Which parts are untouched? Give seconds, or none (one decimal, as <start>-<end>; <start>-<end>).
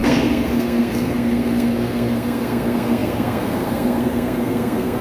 none